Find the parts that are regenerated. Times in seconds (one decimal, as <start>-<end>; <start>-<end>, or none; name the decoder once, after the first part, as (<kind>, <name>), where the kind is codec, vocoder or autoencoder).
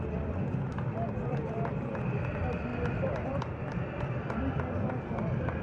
2.7-3.3 (vocoder, BigVGAN v2)